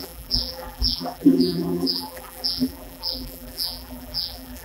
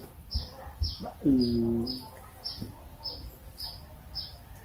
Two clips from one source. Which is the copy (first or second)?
first